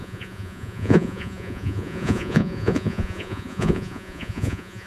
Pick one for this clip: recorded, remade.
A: remade